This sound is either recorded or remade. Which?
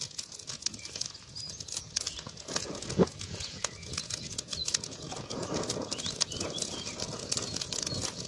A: remade